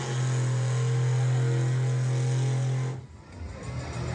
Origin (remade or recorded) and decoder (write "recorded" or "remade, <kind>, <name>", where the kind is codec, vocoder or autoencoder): recorded